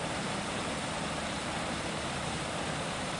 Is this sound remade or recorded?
recorded